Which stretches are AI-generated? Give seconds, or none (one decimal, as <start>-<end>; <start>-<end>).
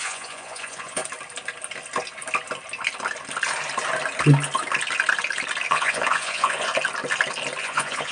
0.0-1.0; 5.7-6.7; 7.6-8.1